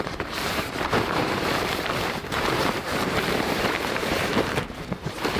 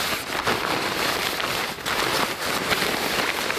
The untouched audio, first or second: second